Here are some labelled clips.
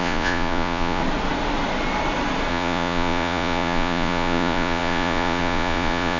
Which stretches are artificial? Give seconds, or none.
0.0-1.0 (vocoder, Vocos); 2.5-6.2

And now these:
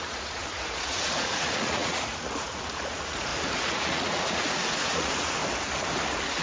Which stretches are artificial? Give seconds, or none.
0.0-5.4 (vocoder, Vocos)

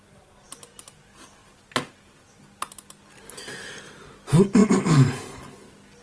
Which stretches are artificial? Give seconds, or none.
none

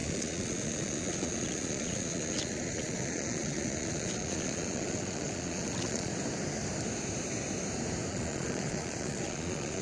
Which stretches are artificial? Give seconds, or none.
0.0-6.1 (vocoder, Vocos); 8.1-9.8

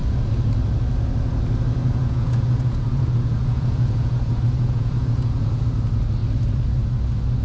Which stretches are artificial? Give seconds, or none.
1.8-5.6 (vocoder, Vocos)